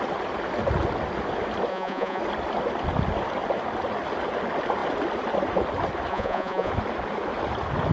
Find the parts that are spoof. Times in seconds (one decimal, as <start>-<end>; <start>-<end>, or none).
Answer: 1.7-2.2; 6.1-6.7